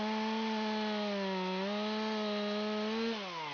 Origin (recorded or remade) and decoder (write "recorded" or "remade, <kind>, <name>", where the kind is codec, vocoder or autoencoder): recorded